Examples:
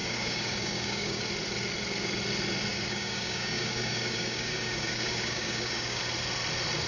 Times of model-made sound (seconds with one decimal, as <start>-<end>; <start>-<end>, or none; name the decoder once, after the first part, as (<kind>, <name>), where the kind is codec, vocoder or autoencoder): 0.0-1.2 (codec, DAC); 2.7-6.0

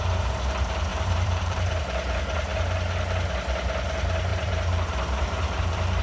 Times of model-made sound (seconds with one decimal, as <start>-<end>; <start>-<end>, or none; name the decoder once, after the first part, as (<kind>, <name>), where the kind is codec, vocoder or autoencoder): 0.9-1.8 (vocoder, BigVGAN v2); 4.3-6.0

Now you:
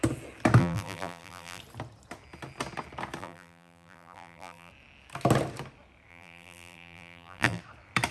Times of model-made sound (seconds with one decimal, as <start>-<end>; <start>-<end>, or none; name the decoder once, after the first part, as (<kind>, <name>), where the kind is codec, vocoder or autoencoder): 0.6-1.6 (vocoder, BigVGAN v2); 3.2-4.7; 6.1-7.6

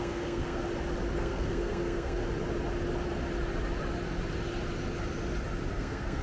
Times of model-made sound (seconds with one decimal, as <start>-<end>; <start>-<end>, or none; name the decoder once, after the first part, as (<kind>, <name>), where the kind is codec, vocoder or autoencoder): 0.0-0.6 (codec, SNAC); 1.2-2.2; 5.7-6.2

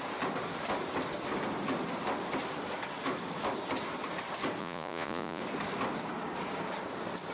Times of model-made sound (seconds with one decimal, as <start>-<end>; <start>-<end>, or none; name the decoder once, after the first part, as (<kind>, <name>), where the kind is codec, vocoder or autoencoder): 4.6-5.4 (vocoder, Vocos)

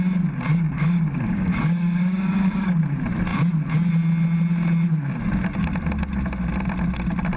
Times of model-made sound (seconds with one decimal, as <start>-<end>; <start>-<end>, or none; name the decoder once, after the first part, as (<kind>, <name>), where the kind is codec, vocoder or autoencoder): 0.5-2.8 (codec, DAC)

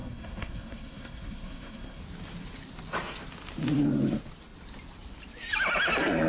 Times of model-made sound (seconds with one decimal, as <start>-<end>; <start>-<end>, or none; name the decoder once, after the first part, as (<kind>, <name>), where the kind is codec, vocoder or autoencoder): 0.0-2.0 (codec, SNAC)

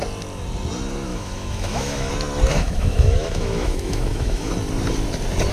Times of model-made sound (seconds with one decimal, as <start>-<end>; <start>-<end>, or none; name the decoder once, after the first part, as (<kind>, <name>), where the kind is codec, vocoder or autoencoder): 1.1-2.1 (autoencoder, DAC-VAE); 2.5-4.5